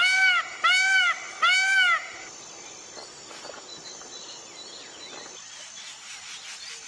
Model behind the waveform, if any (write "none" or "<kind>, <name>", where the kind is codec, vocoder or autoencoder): vocoder, BigVGAN v2